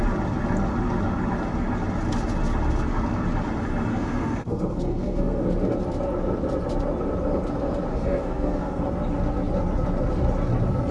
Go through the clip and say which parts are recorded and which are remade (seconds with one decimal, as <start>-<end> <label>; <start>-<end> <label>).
0.0-3.9 recorded; 3.9-5.4 remade; 5.4-7.9 recorded; 7.9-8.8 remade; 8.8-10.9 recorded